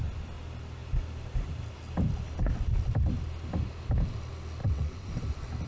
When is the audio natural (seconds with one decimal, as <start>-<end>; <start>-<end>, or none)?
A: 0.0-4.6; 5.1-5.7